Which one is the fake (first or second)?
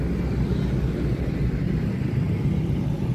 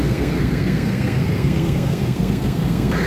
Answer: second